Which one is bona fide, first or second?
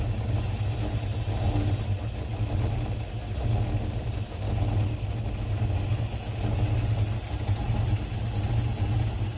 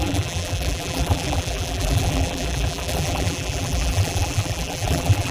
first